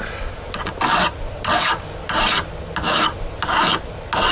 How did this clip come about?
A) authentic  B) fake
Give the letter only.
A